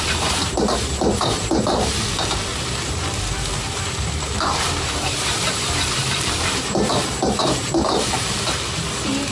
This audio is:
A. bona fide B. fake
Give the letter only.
B